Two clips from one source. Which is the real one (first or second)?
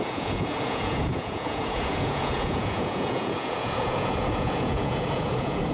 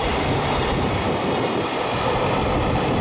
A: second